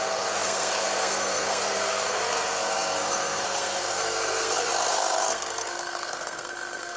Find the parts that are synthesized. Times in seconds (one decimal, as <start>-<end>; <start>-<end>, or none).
0.0-7.0